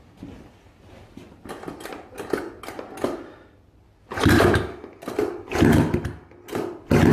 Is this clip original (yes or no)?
yes